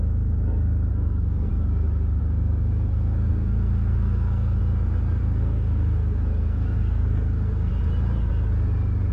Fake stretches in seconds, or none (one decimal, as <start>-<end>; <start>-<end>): 0.9-1.5; 2.2-4.6; 5.2-7.7